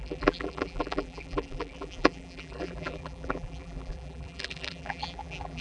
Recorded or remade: remade